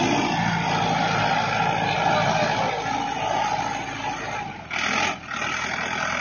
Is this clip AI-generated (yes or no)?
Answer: no